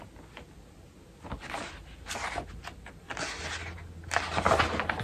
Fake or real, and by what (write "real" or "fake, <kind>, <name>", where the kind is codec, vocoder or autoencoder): real